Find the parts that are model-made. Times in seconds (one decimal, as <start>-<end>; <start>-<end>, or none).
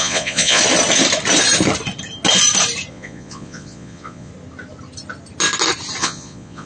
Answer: 0.0-0.6; 2.9-4.3; 6.0-6.7